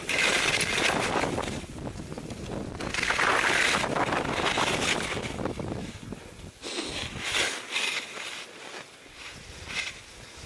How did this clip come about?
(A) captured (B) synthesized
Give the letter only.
A